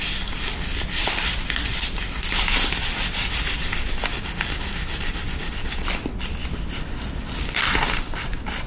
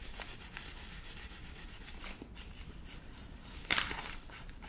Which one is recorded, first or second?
first